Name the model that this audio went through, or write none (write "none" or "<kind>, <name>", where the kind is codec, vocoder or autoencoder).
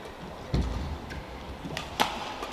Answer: none